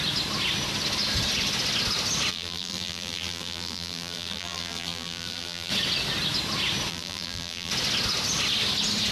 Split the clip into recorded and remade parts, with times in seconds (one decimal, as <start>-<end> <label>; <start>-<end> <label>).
0.0-2.3 recorded; 2.3-5.7 remade; 5.7-6.9 recorded; 6.9-7.7 remade; 7.7-9.1 recorded